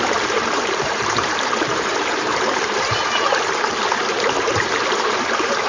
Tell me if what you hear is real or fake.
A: fake